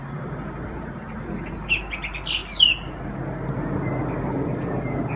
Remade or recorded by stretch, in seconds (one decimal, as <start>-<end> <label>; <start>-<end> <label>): 0.0-5.2 recorded